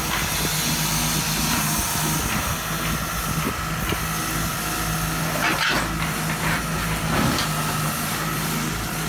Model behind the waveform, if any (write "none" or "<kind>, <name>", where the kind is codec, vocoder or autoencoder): none